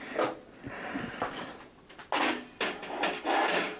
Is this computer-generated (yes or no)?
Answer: no